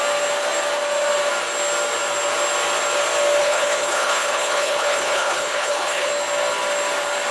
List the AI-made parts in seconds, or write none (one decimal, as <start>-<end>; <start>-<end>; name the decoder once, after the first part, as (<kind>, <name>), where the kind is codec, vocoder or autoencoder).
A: 3.4-6.1 (codec, HILCodec)